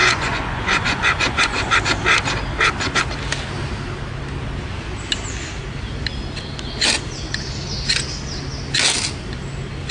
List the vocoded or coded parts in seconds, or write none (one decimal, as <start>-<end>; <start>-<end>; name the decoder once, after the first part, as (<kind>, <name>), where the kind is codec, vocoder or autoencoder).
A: 0.0-1.6 (vocoder, Vocos)